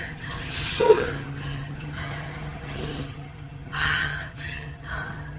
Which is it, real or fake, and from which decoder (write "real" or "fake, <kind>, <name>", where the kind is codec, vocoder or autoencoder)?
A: fake, vocoder, HiFi-GAN